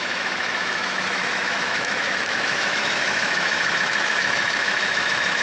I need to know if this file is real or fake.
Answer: fake